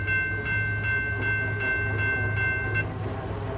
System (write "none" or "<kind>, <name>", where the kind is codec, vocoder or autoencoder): none